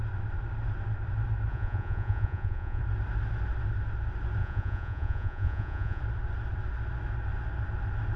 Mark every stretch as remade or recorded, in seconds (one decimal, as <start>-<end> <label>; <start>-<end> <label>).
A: 0.0-1.5 recorded; 1.5-2.8 remade; 2.8-4.4 recorded; 4.4-6.0 remade; 6.0-8.2 recorded